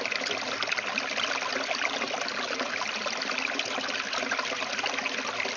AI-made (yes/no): no